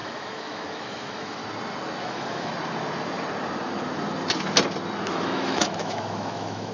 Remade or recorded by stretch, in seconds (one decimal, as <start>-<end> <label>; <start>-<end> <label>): 0.0-1.4 remade; 1.4-2.0 recorded; 2.0-2.5 remade; 2.5-5.1 recorded; 5.1-6.7 remade